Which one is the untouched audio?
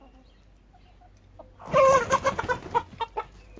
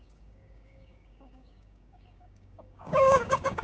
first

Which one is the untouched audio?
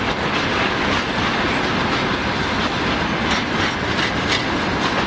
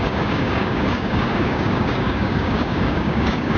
first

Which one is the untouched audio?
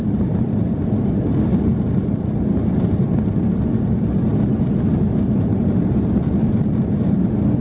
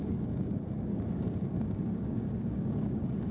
first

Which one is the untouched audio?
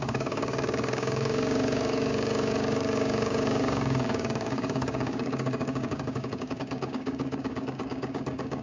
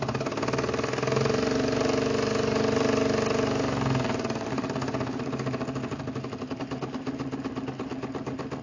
second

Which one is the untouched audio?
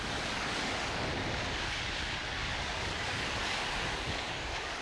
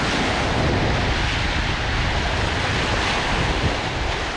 second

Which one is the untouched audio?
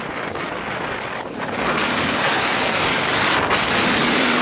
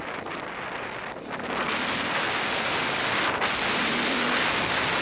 second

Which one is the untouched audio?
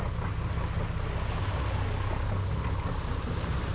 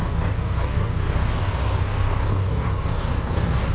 first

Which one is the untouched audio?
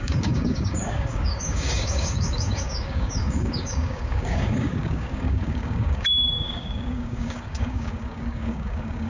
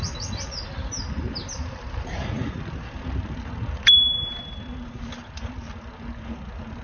second